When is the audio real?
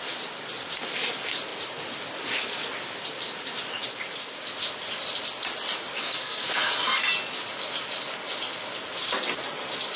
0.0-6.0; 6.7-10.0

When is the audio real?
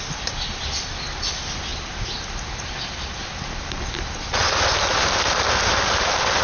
0.0-6.4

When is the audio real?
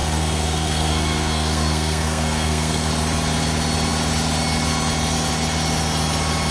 2.9-6.5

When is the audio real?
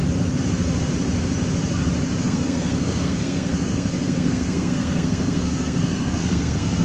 0.0-2.2